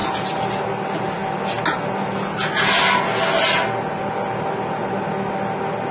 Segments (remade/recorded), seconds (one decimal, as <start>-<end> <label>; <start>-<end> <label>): 0.0-5.9 recorded